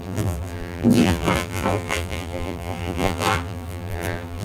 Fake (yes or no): yes